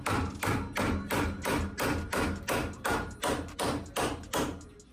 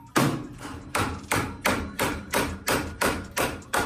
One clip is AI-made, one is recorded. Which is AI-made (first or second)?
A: second